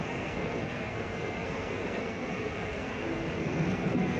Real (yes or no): no